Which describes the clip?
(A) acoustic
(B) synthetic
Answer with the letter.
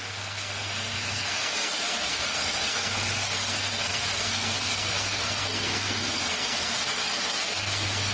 B